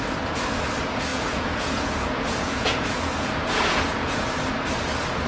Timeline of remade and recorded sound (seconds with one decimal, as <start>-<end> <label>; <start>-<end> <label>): 0.0-1.1 recorded; 1.1-4.3 remade; 4.3-5.3 recorded